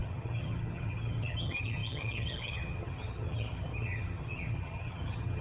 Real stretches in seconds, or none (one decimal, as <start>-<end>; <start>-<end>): none